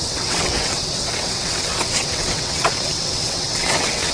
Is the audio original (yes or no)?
no